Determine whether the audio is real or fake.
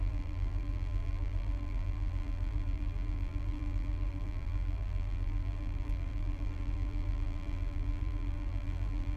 fake